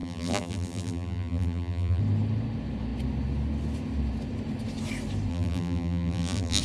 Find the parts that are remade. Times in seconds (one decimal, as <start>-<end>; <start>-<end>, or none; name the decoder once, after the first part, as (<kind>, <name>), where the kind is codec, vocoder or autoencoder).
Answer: 0.0-2.0 (vocoder, BigVGAN v2); 5.3-6.6